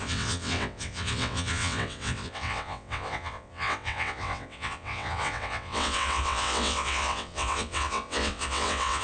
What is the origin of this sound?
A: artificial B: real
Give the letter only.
A